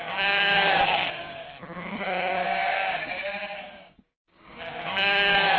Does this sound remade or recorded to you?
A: remade